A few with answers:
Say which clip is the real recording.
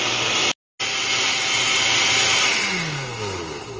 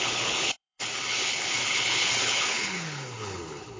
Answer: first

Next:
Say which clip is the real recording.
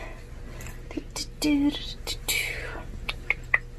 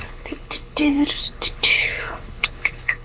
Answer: first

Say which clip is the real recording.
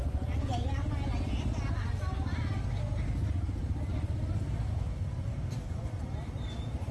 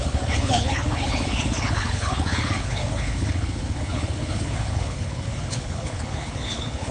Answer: first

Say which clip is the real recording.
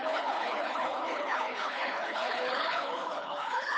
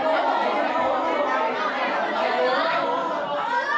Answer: second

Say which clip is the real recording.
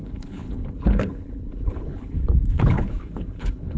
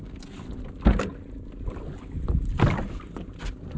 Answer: second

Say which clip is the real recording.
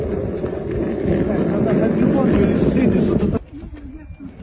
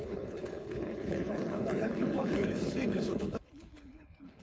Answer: first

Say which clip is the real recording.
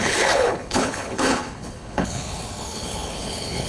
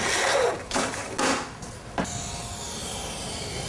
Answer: second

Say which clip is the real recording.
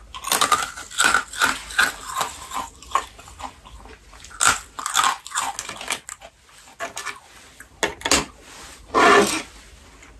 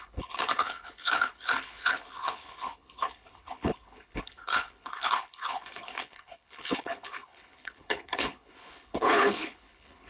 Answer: first